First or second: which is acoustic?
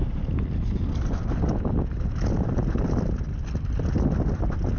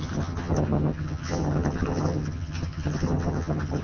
first